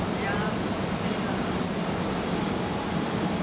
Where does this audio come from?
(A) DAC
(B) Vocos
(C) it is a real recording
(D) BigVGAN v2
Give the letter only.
D